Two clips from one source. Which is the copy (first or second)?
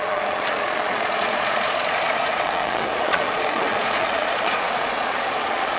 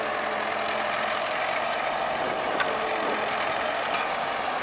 first